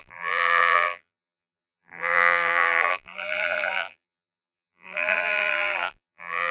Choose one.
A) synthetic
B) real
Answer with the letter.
A